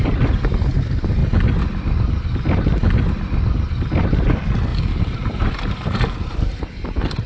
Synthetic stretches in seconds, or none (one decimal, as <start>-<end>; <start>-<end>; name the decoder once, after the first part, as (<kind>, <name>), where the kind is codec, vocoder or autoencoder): 4.7-6.4 (vocoder, BigVGAN v2)